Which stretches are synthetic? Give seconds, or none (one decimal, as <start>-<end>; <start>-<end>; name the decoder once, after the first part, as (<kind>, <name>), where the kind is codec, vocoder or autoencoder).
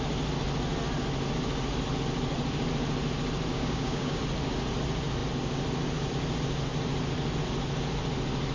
3.5-4.2 (codec, DAC)